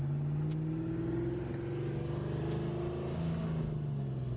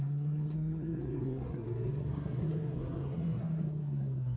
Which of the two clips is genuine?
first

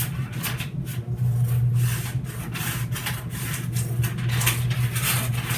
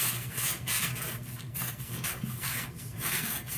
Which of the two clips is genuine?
first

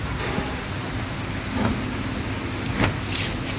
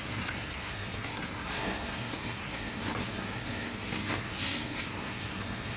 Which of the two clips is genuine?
first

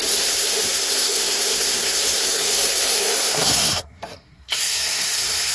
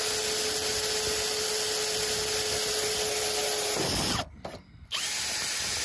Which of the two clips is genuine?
second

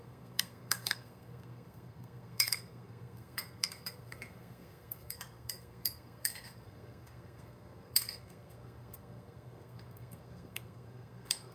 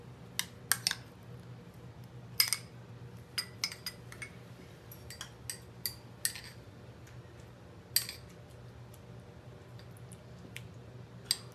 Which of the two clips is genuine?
second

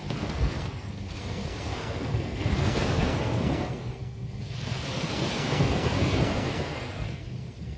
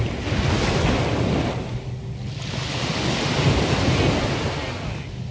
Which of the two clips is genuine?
second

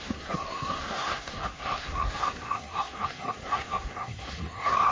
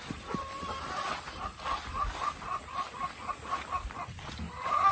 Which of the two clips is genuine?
second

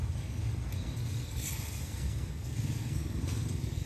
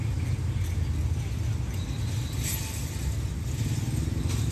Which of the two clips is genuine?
second